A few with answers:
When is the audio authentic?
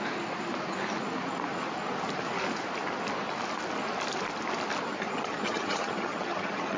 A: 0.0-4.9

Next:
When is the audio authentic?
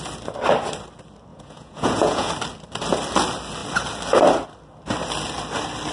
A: 0.0-1.3; 2.3-5.9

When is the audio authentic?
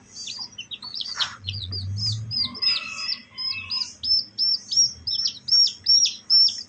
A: 0.0-0.9; 1.7-6.7